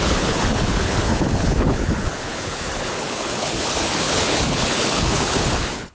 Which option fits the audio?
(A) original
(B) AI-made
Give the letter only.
B